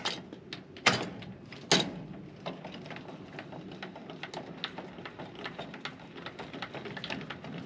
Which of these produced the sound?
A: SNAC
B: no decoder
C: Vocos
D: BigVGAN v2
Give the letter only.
B